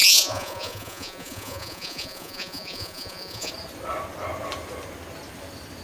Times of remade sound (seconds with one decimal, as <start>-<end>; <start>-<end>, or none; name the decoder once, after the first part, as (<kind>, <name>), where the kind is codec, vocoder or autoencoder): 0.0-3.5 (vocoder, Vocos)